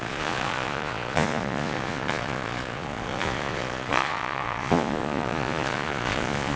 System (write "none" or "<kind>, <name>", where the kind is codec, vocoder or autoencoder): vocoder, Vocos